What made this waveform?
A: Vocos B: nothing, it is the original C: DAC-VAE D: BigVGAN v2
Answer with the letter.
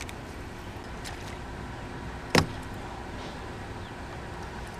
B